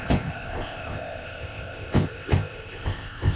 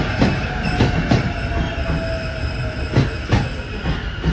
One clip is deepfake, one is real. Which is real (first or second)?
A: second